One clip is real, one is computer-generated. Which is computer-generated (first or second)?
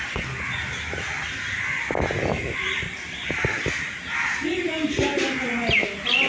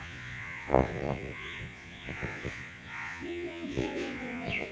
second